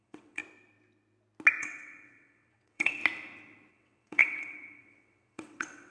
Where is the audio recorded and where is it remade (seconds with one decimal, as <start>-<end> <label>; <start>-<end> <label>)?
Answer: 0.0-0.4 remade; 0.4-1.6 recorded; 1.6-3.0 remade; 3.0-3.7 recorded; 3.7-5.9 remade